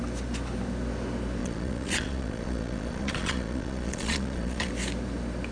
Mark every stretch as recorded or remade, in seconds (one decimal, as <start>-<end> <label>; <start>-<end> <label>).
0.0-1.4 recorded; 1.4-4.7 remade; 4.7-5.5 recorded